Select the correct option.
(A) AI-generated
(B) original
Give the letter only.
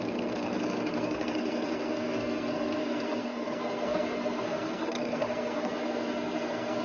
A